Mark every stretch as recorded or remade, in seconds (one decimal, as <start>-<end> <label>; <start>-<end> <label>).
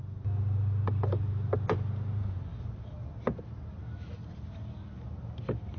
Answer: 0.0-5.8 recorded